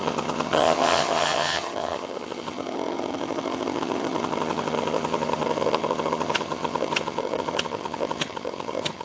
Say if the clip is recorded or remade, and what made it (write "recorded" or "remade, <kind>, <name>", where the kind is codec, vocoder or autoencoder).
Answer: remade, vocoder, HiFi-GAN